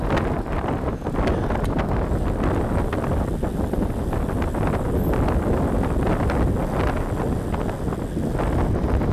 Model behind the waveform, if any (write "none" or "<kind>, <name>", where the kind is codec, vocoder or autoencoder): none